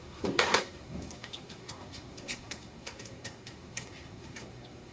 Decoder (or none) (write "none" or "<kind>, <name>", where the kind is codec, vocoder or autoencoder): codec, SNAC